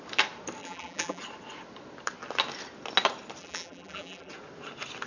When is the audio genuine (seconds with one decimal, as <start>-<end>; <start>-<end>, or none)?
0.0-0.6; 1.2-3.4; 4.3-5.1